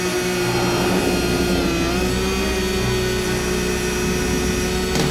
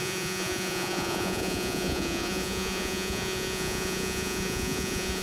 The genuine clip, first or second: first